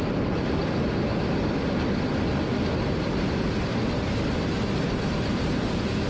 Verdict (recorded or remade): recorded